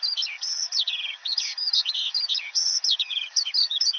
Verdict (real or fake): fake